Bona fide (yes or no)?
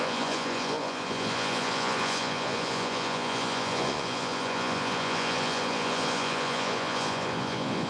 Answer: no